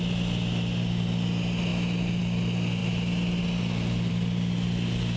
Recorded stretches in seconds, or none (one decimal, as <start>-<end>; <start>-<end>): 0.0-5.2